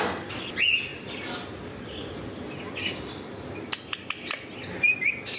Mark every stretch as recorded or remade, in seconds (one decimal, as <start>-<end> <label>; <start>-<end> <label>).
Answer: 0.0-5.4 recorded